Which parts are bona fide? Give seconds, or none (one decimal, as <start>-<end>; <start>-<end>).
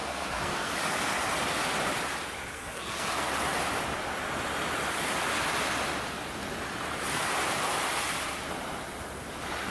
0.7-2.5; 3.3-9.7